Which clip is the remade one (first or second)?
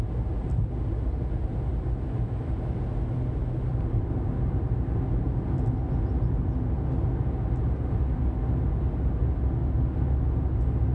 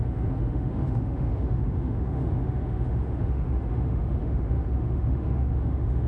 second